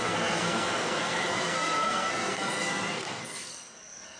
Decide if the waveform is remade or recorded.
remade